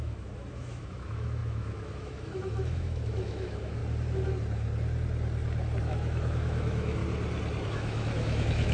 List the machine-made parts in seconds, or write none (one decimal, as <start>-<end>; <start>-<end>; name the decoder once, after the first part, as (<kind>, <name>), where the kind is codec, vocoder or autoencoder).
0.0-3.8 (autoencoder, DAC-VAE); 5.8-7.0; 7.7-8.7